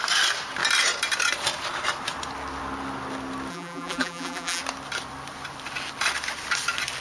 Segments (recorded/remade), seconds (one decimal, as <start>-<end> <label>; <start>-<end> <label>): 0.0-3.5 recorded; 3.5-4.6 remade; 4.6-7.0 recorded